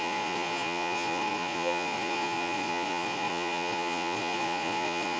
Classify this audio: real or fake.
fake